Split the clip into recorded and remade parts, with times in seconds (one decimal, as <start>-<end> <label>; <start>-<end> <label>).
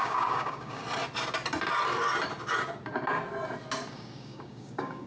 0.0-0.8 remade; 0.8-3.9 recorded; 3.9-5.1 remade